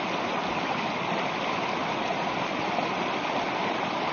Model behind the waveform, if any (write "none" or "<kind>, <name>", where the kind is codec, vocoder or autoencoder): none